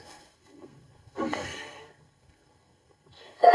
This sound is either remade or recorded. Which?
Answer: remade